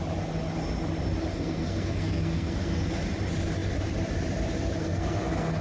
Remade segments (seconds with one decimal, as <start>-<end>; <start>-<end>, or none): 1.3-3.0; 4.8-5.6

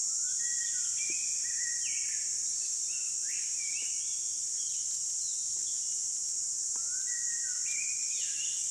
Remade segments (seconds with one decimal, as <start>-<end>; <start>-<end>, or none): 2.4-5.3

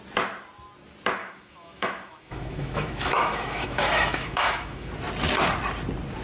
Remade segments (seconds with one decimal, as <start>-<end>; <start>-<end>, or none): 1.2-4.9

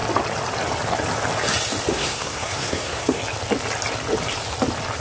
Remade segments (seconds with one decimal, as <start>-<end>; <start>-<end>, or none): 1.9-3.2

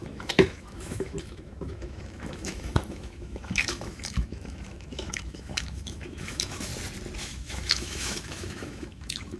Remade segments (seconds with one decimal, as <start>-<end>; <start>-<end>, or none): 0.0-6.7; 7.2-9.4